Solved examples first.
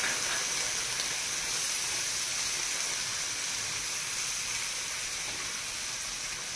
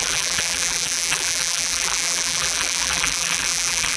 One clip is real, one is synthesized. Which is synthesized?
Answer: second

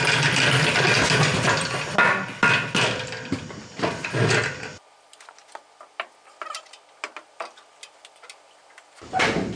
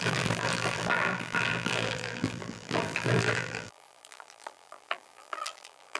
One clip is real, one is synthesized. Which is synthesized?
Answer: second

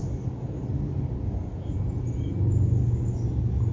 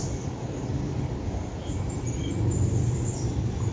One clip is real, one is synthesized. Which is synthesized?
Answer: second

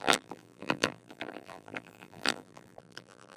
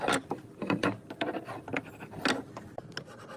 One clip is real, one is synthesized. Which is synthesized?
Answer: first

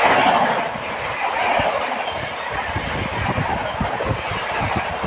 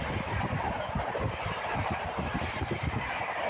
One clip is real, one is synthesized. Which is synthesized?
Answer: second